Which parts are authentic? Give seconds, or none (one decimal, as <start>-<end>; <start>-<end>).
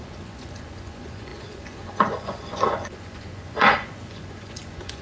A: none